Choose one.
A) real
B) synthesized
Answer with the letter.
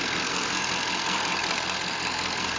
B